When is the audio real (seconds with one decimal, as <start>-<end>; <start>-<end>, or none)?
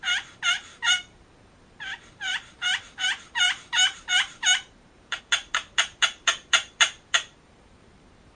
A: none